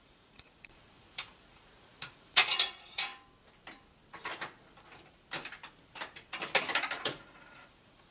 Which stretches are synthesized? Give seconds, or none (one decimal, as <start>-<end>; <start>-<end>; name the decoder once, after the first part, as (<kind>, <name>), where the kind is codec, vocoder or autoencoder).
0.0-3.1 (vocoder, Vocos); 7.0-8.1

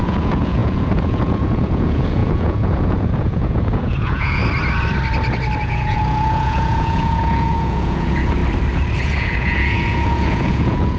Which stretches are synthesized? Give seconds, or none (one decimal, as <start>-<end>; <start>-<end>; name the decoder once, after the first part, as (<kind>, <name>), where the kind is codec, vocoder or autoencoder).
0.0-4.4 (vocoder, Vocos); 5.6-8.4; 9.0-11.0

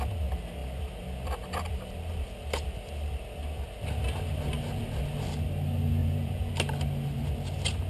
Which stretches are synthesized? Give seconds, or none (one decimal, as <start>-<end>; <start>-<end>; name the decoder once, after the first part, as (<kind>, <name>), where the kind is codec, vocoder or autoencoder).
6.0-6.5 (vocoder, Vocos)